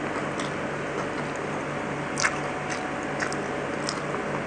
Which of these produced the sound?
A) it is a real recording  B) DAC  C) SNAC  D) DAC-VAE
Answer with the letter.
A